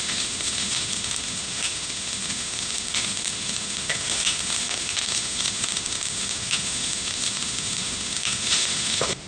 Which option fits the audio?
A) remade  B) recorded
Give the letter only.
A